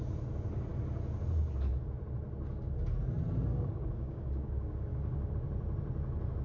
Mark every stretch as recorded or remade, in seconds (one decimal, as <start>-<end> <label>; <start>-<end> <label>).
0.0-3.5 recorded; 3.5-5.3 remade; 5.3-6.4 recorded